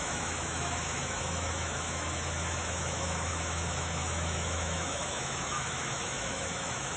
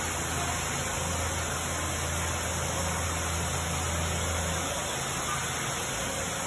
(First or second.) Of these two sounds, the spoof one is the first